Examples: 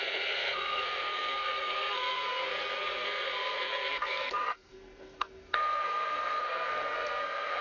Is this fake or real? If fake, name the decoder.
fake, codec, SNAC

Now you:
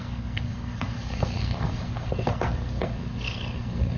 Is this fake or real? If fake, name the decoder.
fake, codec, SNAC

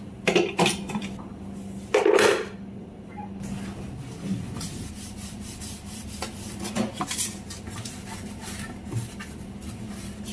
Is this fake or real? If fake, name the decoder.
real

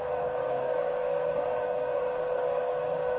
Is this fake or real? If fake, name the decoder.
fake, codec, SNAC